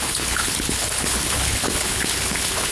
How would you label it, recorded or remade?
remade